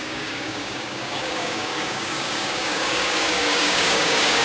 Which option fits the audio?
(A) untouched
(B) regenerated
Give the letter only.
B